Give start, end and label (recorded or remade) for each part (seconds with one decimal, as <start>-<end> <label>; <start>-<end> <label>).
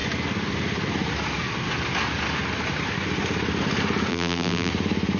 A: 0.0-4.1 recorded; 4.1-4.7 remade; 4.7-5.2 recorded